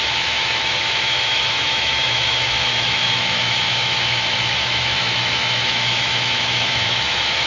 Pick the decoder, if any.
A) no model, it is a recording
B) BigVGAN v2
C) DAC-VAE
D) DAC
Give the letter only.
C